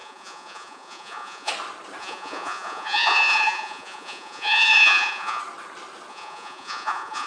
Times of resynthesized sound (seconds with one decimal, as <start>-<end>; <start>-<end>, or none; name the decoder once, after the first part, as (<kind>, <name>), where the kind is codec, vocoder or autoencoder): 0.0-1.5 (vocoder, Vocos); 2.0-5.4; 6.1-7.3